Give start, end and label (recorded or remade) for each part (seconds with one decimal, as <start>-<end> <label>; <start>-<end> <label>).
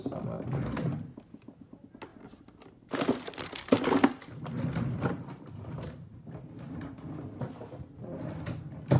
0.0-9.0 recorded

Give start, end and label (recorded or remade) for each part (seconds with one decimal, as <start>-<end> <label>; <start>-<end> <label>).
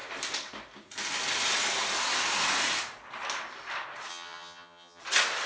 0.0-4.1 recorded; 4.1-5.0 remade; 5.0-5.5 recorded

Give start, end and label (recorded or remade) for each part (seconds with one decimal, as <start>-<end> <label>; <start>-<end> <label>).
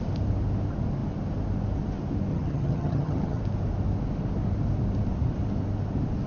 0.0-2.3 recorded; 2.3-3.4 remade; 3.4-6.3 recorded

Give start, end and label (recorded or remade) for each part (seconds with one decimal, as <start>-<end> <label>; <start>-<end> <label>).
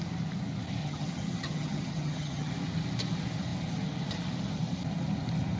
0.0-0.8 recorded; 0.8-2.5 remade; 2.5-5.6 recorded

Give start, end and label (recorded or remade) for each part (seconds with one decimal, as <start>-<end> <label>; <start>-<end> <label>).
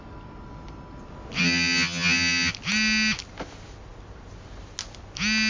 0.0-1.4 recorded; 1.4-2.5 remade; 2.5-5.5 recorded